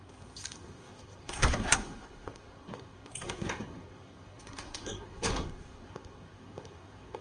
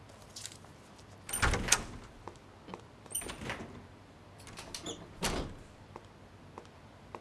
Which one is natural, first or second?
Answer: second